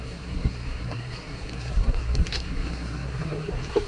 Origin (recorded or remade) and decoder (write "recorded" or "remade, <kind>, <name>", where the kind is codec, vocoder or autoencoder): remade, codec, SNAC